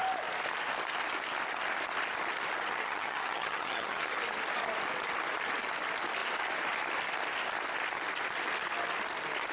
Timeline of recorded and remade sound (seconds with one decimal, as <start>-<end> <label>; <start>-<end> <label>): 0.0-2.7 recorded; 2.7-4.1 remade; 4.1-9.5 recorded

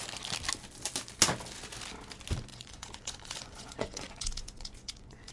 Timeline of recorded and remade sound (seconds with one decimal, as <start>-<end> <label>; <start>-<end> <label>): 0.0-2.5 recorded; 2.5-5.3 remade

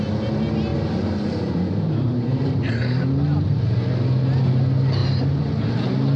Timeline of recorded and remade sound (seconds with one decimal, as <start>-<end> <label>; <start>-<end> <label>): 0.0-0.7 recorded; 0.7-3.6 remade; 3.6-5.0 recorded; 5.0-5.7 remade; 5.7-6.2 recorded